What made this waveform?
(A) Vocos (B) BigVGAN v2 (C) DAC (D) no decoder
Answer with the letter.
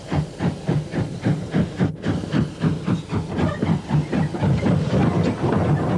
D